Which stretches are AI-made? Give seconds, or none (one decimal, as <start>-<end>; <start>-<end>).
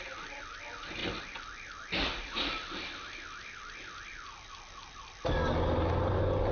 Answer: none